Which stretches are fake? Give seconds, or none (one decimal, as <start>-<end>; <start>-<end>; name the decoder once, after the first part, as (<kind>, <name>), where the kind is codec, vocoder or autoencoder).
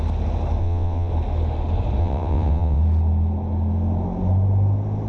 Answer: 0.6-1.1 (vocoder, WaveNeXt); 2.0-2.8